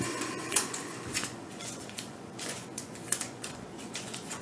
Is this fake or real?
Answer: fake